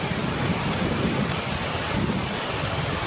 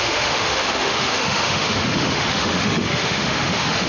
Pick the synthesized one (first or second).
second